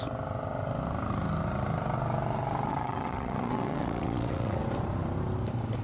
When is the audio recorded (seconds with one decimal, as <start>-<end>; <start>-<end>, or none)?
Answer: 0.0-2.7; 4.6-5.8

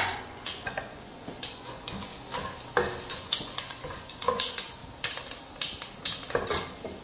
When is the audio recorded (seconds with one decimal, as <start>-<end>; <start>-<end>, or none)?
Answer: 2.1-3.1; 4.8-7.0